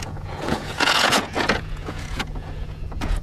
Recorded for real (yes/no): no